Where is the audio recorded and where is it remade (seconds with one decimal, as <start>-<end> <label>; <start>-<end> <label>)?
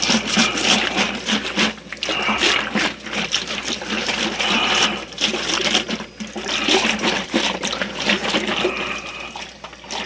0.0-10.1 recorded